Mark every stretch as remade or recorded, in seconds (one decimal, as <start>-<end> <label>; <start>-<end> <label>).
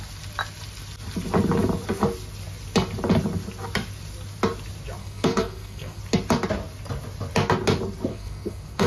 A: 0.0-5.0 recorded; 5.0-6.0 remade; 6.0-8.1 recorded; 8.1-8.9 remade